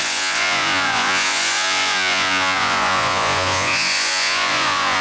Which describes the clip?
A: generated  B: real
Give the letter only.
A